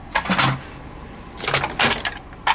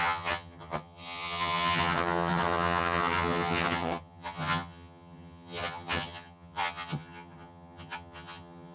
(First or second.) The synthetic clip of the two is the second